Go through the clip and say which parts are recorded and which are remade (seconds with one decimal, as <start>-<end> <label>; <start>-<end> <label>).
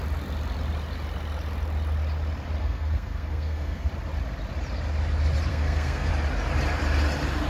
0.0-2.6 recorded; 2.6-3.9 remade; 3.9-5.5 recorded; 5.5-6.1 remade; 6.1-7.5 recorded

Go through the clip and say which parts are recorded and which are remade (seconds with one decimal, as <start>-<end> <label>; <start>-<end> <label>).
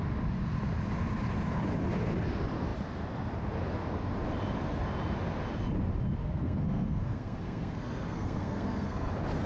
0.0-6.2 recorded; 6.2-9.1 remade; 9.1-9.5 recorded